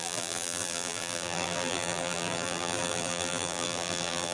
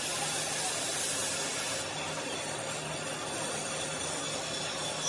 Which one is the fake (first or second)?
first